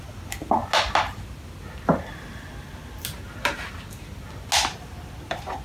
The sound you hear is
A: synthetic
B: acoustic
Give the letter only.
B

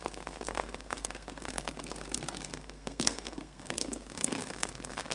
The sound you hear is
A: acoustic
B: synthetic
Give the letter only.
B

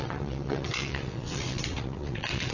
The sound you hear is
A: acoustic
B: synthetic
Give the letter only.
B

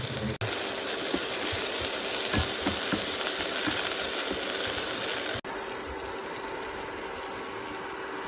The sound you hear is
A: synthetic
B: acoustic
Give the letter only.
B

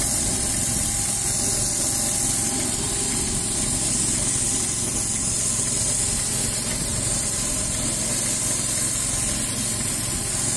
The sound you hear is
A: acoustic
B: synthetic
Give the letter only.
A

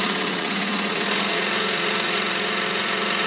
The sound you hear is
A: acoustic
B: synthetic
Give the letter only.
B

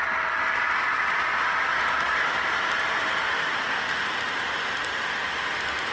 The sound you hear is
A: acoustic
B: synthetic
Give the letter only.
A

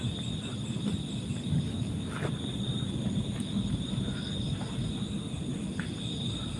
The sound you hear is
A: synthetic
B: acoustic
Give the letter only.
B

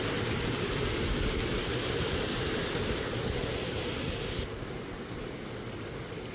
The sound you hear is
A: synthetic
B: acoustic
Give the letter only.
B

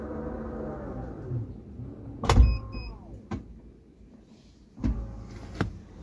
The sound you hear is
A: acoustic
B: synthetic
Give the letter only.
A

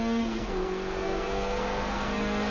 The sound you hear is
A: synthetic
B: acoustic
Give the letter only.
A